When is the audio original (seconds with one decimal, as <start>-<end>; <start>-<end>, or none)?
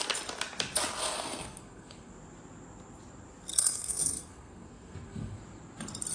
0.0-1.0; 2.1-3.5; 5.4-6.1